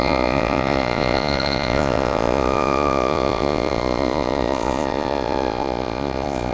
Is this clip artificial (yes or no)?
yes